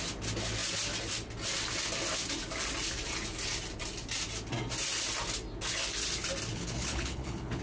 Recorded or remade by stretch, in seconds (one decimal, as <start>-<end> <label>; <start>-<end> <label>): 0.0-6.5 recorded; 6.5-7.6 remade